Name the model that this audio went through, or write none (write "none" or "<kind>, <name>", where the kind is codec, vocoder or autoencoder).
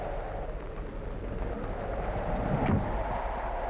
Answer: none